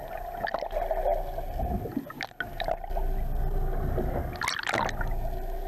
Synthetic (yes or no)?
no